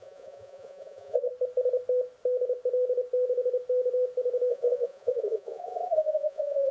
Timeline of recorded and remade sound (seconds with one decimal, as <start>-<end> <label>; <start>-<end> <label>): 0.0-1.3 remade; 1.3-4.5 recorded; 4.5-6.7 remade